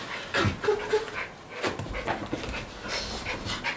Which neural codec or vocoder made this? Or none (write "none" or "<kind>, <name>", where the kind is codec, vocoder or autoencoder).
none